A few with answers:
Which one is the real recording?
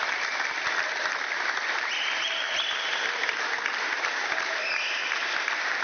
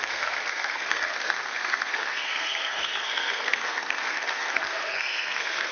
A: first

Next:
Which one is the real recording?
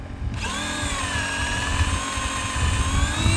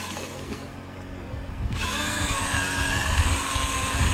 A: first